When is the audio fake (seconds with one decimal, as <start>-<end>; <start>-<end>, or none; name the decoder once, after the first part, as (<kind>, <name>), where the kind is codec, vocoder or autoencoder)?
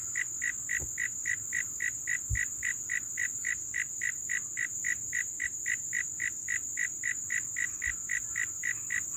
6.7-7.8 (vocoder, BigVGAN v2)